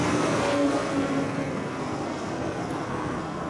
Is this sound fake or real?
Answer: fake